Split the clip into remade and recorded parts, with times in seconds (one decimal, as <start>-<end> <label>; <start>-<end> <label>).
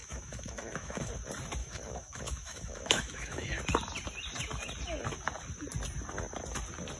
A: 0.0-1.1 remade; 1.1-1.6 recorded; 1.6-3.6 remade; 3.6-7.0 recorded